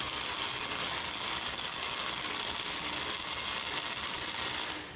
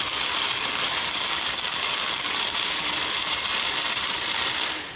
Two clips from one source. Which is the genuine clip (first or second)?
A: first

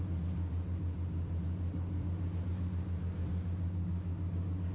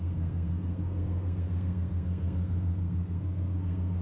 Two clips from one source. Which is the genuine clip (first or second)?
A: first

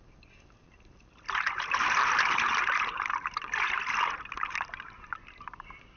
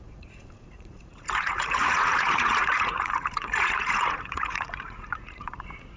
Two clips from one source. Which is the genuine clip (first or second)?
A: first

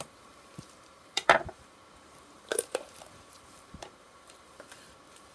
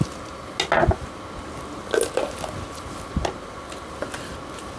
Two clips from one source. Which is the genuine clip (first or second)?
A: second